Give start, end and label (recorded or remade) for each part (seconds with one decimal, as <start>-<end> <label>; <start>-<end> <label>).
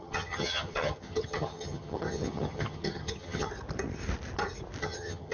0.0-3.5 remade; 3.5-4.8 recorded; 4.8-5.3 remade